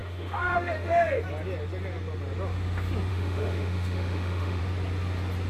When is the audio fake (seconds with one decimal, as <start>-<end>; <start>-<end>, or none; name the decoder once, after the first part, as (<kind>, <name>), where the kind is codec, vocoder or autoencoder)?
0.0-1.2 (autoencoder, DAC-VAE); 3.1-4.6